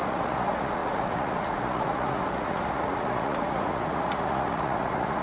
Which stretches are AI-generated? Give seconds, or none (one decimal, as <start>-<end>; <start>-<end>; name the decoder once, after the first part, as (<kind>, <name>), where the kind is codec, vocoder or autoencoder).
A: 0.0-5.2 (vocoder, Vocos)